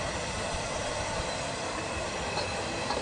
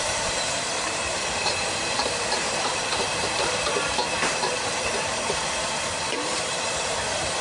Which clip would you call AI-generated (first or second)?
second